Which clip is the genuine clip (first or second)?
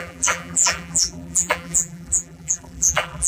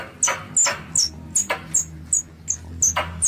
second